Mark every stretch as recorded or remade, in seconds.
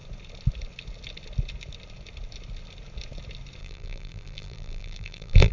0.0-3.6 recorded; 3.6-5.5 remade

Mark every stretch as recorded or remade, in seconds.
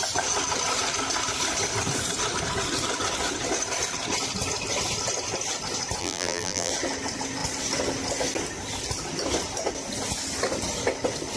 0.0-6.0 recorded; 6.0-6.7 remade; 6.7-11.4 recorded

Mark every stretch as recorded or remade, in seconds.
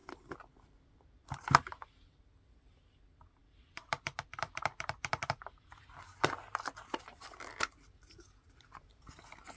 0.0-2.2 remade; 2.2-3.4 recorded; 3.4-6.4 remade; 6.4-9.6 recorded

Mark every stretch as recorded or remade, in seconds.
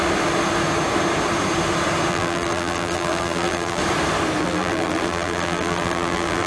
0.0-2.1 recorded; 2.1-3.8 remade; 3.8-4.4 recorded; 4.4-6.5 remade